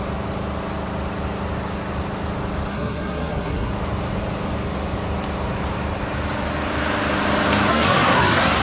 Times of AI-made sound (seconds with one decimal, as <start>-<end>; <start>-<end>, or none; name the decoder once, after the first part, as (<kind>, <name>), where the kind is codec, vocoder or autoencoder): 2.7-3.7 (codec, SNAC); 7.7-8.6